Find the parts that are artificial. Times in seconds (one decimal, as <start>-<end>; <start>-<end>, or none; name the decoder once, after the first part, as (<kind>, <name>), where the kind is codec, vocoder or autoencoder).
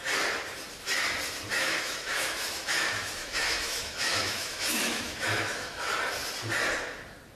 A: 1.5-5.9 (autoencoder, DAC-VAE)